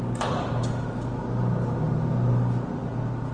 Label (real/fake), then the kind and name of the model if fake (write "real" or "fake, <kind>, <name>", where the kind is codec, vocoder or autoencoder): real